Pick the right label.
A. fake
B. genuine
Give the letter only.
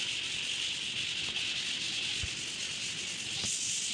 B